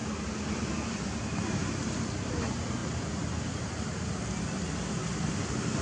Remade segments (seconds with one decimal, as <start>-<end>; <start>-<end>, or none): none